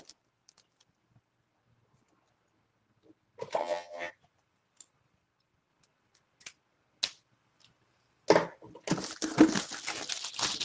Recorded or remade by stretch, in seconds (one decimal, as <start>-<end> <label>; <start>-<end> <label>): 0.0-3.6 recorded; 3.6-4.1 remade; 4.1-10.6 recorded